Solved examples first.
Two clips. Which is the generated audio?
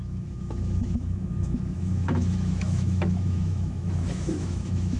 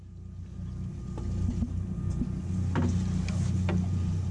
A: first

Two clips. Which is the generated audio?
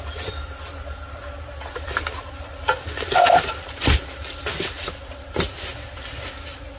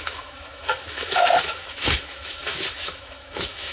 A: second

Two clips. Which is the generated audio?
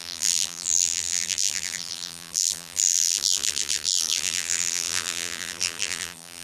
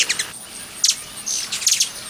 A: first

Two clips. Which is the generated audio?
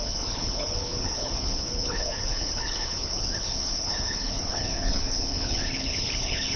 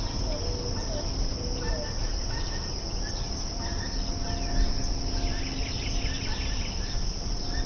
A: first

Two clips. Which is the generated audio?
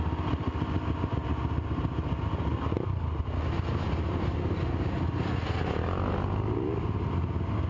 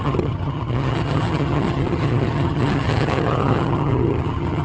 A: second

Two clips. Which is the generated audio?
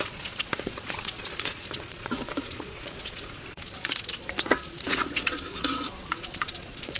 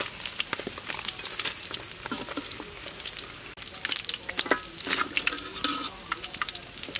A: first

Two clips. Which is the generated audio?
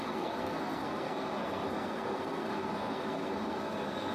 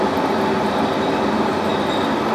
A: first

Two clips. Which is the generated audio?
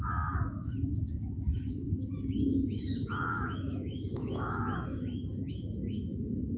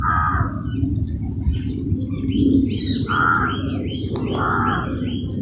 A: first